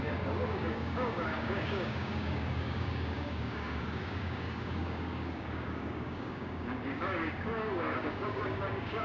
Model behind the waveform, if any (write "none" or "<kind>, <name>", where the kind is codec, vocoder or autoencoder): codec, DAC